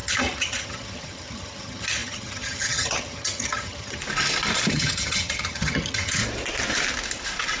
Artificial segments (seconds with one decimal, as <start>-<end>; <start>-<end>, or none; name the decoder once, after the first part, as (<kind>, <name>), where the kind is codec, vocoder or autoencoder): 0.0-4.0 (vocoder, HiFi-GAN); 4.7-6.2